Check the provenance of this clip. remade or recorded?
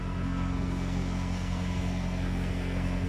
remade